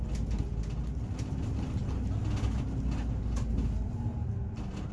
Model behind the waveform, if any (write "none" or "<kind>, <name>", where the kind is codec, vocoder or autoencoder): none